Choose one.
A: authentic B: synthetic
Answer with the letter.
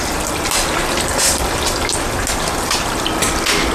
A